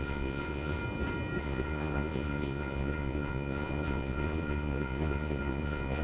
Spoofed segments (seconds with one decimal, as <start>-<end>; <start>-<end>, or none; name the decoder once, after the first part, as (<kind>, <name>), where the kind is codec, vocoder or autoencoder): 0.0-0.8 (vocoder, Vocos); 1.4-6.0